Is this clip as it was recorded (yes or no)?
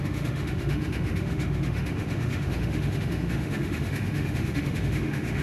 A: no